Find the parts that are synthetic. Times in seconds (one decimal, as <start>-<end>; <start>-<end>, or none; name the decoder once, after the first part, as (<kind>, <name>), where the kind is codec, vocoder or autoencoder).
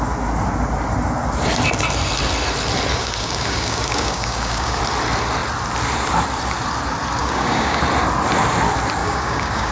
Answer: 2.9-4.8 (codec, DAC); 7.2-7.8; 9.0-9.7